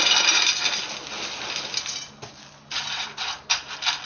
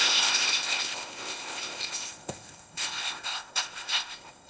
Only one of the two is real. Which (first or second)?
first